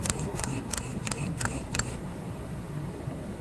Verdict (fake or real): fake